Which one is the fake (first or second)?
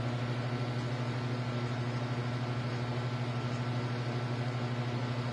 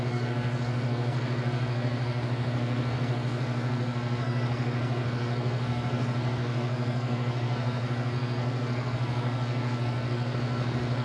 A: second